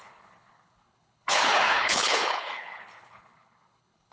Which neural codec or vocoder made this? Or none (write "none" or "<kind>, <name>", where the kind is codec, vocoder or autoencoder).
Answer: codec, HILCodec